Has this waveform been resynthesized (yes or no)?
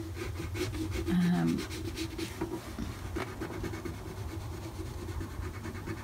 no